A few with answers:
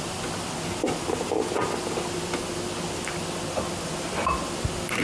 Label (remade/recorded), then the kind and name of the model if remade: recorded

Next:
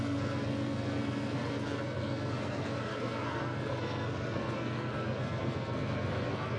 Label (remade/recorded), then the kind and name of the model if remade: remade, codec, SNAC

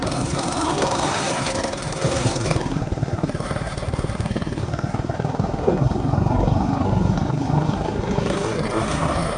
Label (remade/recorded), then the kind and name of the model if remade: remade, codec, SNAC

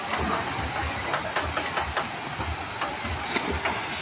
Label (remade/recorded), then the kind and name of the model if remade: recorded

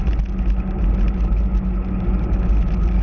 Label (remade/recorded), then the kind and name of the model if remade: recorded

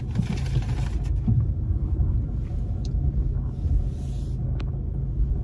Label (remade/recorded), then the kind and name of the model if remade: recorded